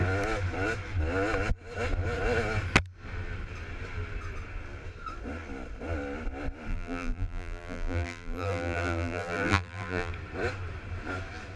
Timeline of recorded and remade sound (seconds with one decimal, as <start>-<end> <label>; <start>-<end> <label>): 0.0-6.7 recorded; 6.7-10.1 remade; 10.1-11.6 recorded